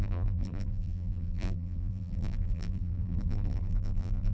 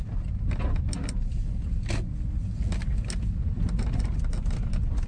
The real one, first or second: second